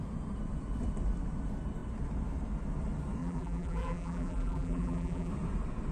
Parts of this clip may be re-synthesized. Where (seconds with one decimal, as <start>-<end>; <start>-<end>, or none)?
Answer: 3.2-5.3